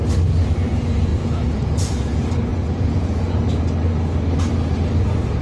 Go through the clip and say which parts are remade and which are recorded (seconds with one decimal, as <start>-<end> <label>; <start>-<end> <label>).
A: 0.0-1.1 recorded; 1.1-1.9 remade; 1.9-2.5 recorded; 2.5-3.4 remade; 3.4-5.4 recorded